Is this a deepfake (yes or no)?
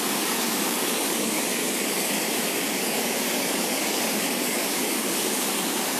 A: yes